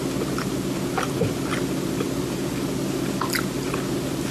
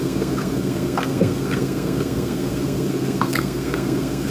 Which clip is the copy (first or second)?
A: second